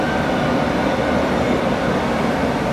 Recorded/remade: recorded